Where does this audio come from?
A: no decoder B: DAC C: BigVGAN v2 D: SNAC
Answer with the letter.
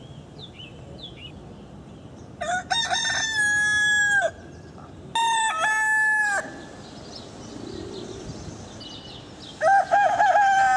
A